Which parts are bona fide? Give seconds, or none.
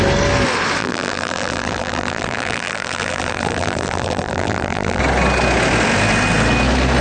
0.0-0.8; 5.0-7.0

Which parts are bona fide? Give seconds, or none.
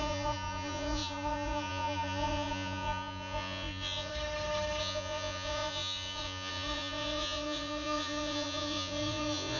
4.1-4.8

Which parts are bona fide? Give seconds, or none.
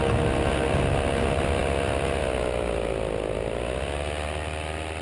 0.0-5.0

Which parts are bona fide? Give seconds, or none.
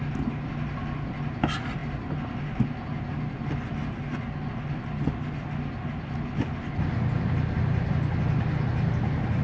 0.0-9.4